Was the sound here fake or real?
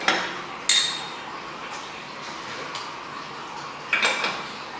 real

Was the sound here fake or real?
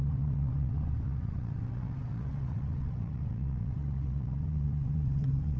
fake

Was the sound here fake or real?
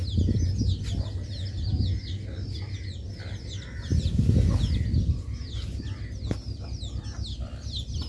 real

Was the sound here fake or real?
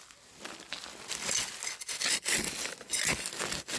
real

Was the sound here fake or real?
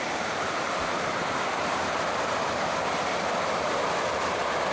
real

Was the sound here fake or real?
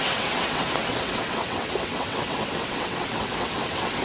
fake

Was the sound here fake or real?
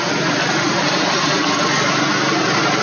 real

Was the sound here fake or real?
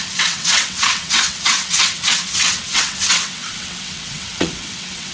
fake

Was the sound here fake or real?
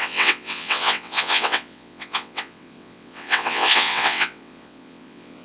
fake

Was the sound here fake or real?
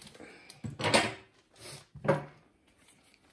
real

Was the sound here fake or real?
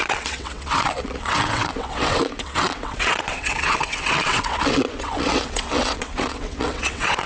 fake